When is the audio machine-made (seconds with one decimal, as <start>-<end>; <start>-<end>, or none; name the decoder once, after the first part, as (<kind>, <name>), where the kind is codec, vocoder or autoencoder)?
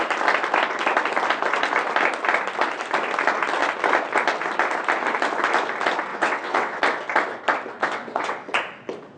6.1-6.8 (vocoder, WaveNeXt); 7.8-8.5